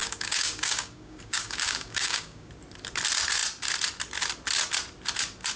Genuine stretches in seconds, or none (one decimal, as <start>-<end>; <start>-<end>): 2.5-5.6